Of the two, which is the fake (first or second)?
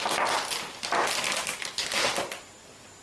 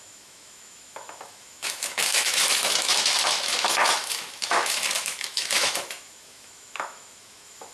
second